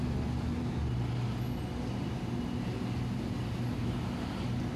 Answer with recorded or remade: recorded